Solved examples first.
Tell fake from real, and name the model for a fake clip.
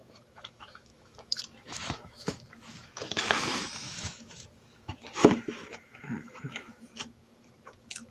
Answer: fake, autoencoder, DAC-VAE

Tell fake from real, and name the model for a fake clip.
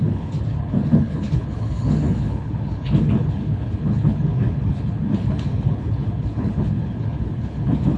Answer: fake, codec, HILCodec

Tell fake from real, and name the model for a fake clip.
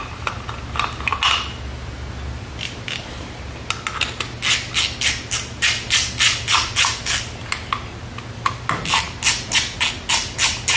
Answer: real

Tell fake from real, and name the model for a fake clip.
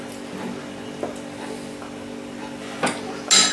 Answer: real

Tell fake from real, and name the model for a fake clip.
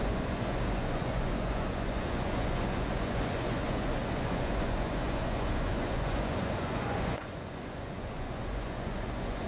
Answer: fake, vocoder, Vocos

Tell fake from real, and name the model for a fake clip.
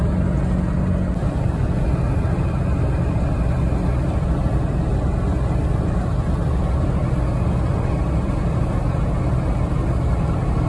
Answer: real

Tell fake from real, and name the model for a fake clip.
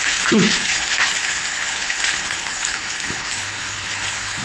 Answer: fake, codec, HILCodec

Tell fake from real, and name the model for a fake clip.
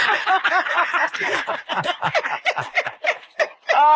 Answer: real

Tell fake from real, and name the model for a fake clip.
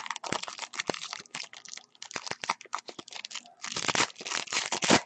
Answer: real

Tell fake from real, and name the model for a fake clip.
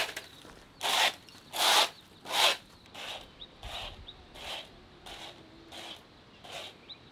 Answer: real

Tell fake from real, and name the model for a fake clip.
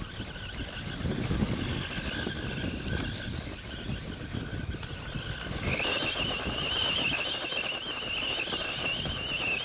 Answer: real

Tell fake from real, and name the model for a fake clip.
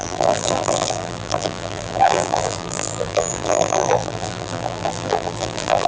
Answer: fake, vocoder, BigVGAN v2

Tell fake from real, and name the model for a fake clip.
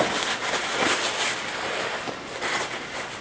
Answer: real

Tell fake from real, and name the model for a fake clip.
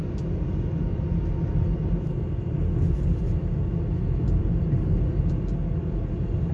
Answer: real